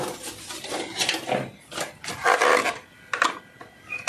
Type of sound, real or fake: fake